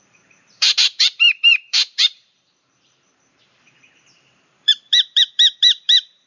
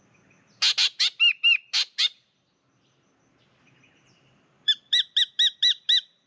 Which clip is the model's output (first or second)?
first